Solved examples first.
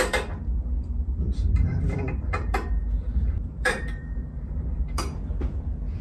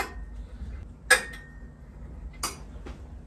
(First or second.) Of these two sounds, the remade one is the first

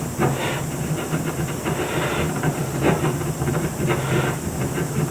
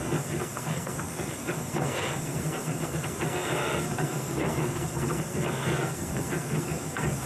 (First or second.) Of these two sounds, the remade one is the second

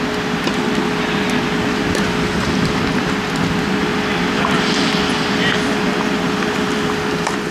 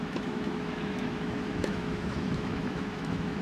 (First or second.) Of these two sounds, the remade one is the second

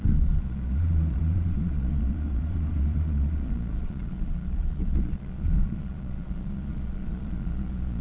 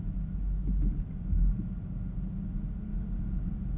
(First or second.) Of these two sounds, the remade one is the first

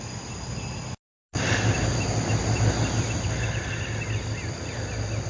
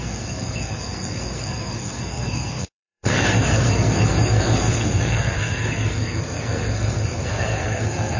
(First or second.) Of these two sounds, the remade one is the second